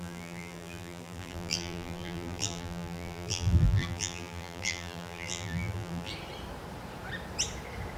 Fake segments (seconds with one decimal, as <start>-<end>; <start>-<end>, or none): 0.0-6.1